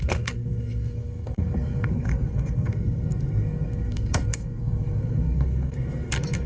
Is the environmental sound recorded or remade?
remade